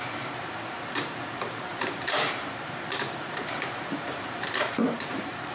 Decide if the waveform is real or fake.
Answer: fake